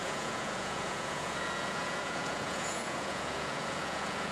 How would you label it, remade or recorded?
remade